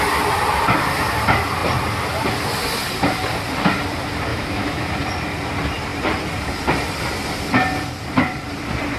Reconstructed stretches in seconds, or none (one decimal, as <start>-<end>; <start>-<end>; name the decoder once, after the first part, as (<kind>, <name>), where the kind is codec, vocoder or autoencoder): 4.3-4.9 (autoencoder, DAC-VAE)